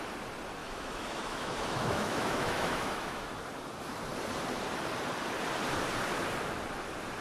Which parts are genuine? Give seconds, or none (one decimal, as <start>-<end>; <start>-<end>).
0.0-0.6; 3.3-7.2